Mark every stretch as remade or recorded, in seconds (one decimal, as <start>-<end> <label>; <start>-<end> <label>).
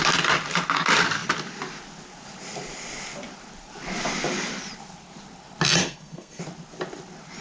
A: 0.0-5.8 recorded; 5.8-6.4 remade; 6.4-7.4 recorded